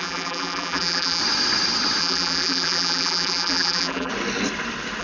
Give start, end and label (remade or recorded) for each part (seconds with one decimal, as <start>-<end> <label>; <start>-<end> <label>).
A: 0.0-1.2 remade; 1.2-2.0 recorded; 2.0-4.1 remade; 4.1-5.0 recorded